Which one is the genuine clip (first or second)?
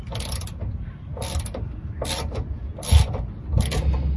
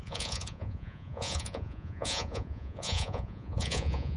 first